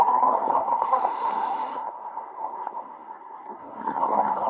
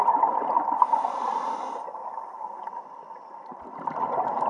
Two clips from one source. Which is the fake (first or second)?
first